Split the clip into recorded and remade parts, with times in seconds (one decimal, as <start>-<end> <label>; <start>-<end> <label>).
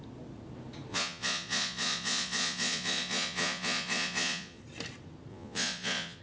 0.0-0.9 recorded; 0.9-4.6 remade; 4.6-5.3 recorded; 5.3-6.2 remade